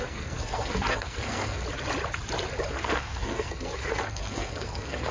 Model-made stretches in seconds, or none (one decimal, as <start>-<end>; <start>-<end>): 0.0-1.6; 2.7-5.1